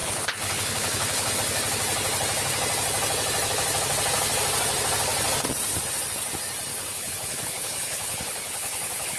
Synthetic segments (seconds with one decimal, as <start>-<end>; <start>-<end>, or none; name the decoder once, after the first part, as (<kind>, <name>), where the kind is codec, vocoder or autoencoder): 0.0-1.3 (codec, HILCodec); 6.7-9.2